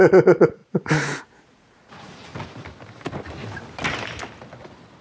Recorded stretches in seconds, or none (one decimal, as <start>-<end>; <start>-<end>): 2.3-5.0